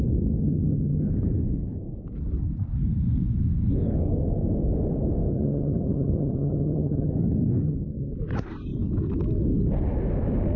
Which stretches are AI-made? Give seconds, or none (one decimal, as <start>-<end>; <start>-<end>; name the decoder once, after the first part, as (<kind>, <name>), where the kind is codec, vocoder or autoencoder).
0.4-1.1 (vocoder, HiFi-GAN); 5.3-7.1; 7.6-8.1